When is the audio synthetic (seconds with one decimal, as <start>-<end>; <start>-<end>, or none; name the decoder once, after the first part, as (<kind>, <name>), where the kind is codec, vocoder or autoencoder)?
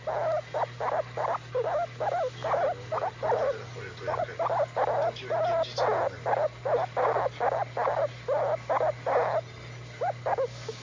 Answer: none